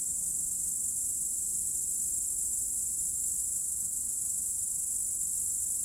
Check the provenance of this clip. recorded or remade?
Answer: recorded